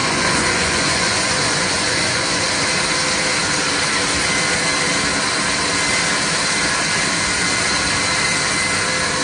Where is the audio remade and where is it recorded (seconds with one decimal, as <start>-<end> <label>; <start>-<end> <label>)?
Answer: 0.0-2.5 remade; 2.5-9.2 recorded